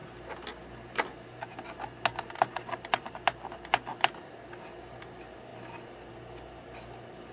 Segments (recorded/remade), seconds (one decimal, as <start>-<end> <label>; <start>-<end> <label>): 0.0-7.3 recorded